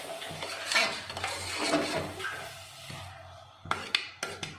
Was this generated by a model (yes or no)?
no